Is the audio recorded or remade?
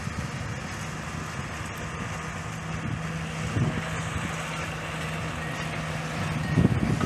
recorded